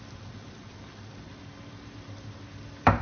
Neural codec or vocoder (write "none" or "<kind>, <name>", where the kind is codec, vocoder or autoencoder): vocoder, BigVGAN v2